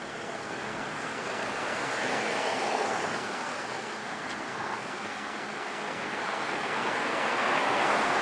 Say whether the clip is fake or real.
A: fake